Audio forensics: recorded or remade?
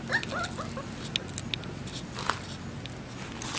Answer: recorded